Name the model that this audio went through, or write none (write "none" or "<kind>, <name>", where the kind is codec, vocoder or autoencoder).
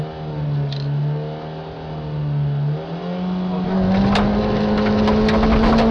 none